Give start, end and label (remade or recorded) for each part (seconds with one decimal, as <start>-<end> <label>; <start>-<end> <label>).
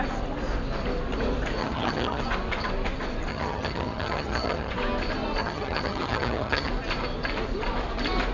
0.0-1.6 recorded; 1.6-2.2 remade; 2.2-3.3 recorded; 3.3-4.7 remade; 4.7-5.4 recorded; 5.4-6.7 remade; 6.7-8.3 recorded